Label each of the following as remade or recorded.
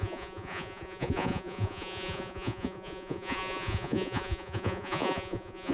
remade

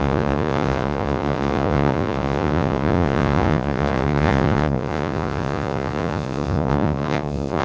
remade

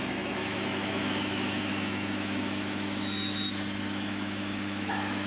remade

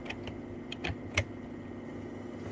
recorded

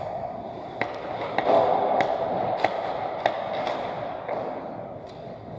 recorded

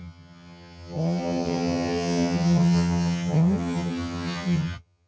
remade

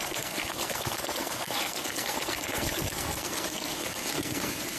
remade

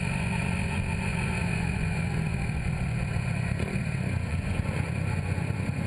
remade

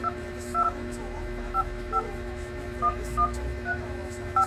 remade